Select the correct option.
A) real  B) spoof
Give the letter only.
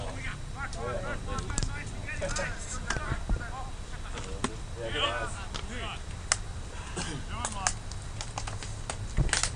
A